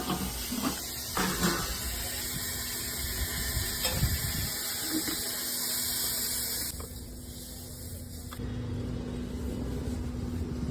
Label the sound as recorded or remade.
recorded